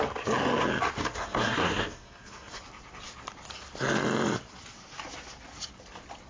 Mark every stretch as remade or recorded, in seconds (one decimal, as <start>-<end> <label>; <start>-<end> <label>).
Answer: 0.0-1.0 recorded; 1.0-2.6 remade; 2.6-6.3 recorded